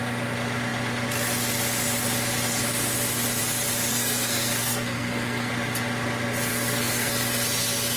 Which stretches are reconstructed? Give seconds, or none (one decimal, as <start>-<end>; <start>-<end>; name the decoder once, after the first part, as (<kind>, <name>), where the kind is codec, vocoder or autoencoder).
3.9-5.5 (codec, SNAC); 6.5-7.1